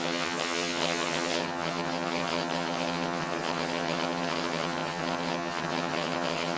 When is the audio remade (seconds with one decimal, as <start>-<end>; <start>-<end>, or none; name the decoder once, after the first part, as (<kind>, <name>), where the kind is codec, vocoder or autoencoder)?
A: 0.0-6.6 (vocoder, HiFi-GAN)